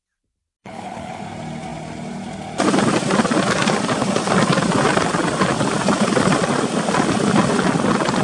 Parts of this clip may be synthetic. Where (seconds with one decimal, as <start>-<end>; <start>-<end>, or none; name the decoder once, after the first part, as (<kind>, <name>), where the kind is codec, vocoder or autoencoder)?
0.6-1.2 (codec, HILCodec)